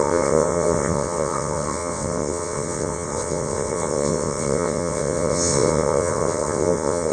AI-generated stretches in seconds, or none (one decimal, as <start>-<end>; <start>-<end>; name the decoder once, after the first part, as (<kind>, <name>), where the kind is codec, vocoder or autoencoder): 0.0-7.1 (vocoder, WaveNeXt)